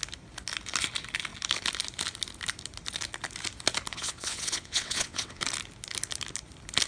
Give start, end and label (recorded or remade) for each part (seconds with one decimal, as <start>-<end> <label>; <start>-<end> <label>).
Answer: 0.0-3.9 recorded; 3.9-5.4 remade; 5.4-6.9 recorded